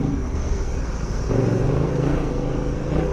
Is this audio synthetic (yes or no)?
yes